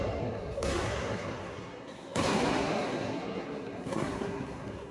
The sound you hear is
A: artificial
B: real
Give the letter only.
A